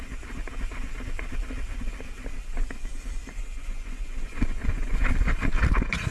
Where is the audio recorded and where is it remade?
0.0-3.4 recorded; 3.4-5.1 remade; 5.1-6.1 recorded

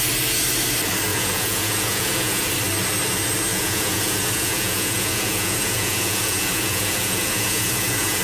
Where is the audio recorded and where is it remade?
0.0-1.1 recorded; 1.1-2.5 remade; 2.5-3.5 recorded; 3.5-8.2 remade

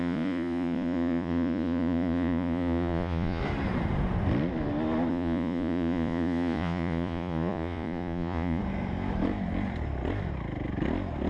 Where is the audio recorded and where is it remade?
0.0-3.4 remade; 3.4-5.1 recorded; 5.1-8.6 remade; 8.6-11.3 recorded

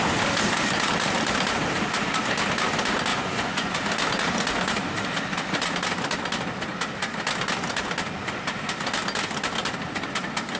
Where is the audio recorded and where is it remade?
0.0-3.1 recorded; 3.1-3.7 remade; 3.7-10.6 recorded

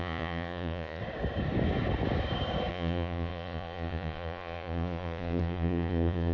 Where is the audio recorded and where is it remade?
0.0-1.0 remade; 1.0-2.7 recorded; 2.7-6.3 remade

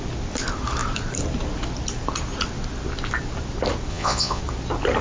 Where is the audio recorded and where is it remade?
0.0-3.9 recorded; 3.9-4.4 remade; 4.4-5.0 recorded

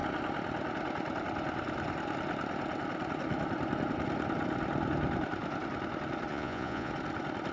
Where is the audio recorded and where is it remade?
0.0-6.3 recorded; 6.3-6.9 remade; 6.9-7.5 recorded

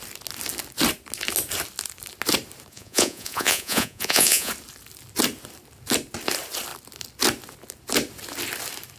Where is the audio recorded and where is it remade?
0.0-2.7 recorded; 2.7-4.5 remade; 4.5-9.0 recorded